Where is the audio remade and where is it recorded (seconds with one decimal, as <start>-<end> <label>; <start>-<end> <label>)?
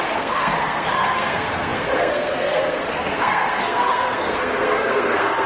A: 0.0-5.5 remade